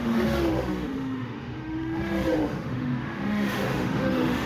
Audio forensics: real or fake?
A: fake